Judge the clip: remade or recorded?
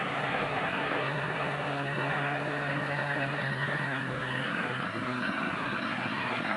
remade